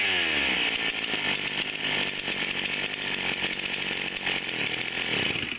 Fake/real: real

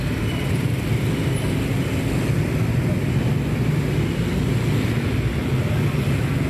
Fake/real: real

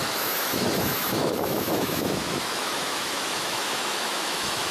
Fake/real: fake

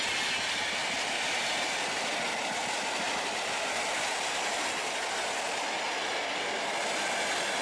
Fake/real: real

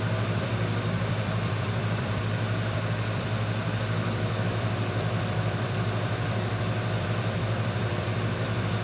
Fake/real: fake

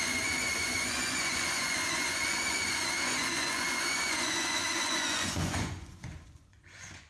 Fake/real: fake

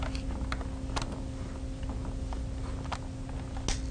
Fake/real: real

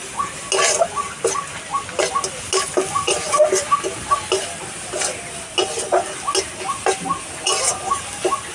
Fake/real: real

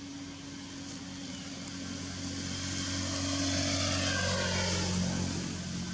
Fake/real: real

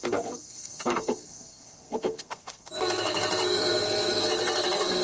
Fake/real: fake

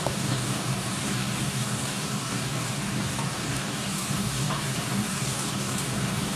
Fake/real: fake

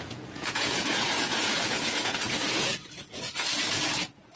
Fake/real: fake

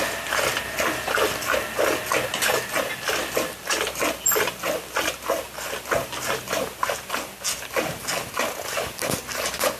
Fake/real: real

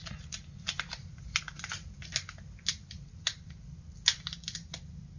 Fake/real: real